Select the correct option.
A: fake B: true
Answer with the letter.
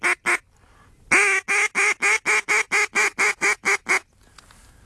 B